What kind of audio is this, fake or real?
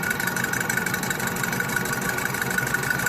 real